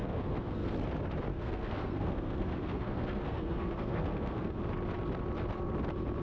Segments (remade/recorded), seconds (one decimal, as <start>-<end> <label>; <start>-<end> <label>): 0.0-0.7 remade; 0.7-1.3 recorded; 1.3-4.6 remade; 4.6-6.2 recorded